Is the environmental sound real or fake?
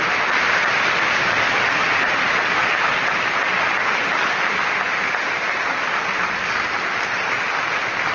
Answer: real